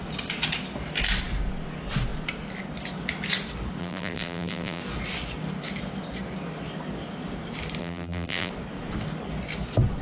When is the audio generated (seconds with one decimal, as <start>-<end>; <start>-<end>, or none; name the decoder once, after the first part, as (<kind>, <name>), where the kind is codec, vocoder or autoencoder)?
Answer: 3.8-4.8 (vocoder, BigVGAN v2); 7.8-8.5